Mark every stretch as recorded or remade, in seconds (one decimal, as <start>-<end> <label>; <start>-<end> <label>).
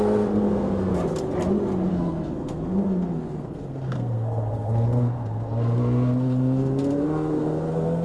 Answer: 0.0-0.9 remade; 0.9-1.9 recorded; 1.9-8.0 remade